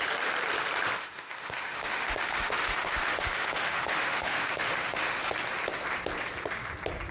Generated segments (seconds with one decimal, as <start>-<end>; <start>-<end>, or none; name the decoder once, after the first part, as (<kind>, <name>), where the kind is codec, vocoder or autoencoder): 1.0-5.3 (autoencoder, DAC-VAE)